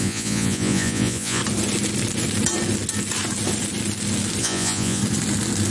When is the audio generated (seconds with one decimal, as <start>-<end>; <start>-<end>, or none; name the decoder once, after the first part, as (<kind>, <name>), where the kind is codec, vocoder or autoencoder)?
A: 0.0-1.4 (vocoder, Vocos); 4.4-5.0